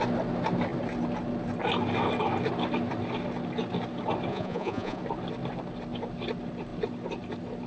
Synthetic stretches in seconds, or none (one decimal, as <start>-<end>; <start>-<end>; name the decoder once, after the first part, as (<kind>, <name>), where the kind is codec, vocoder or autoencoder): 4.3-5.0 (vocoder, Vocos)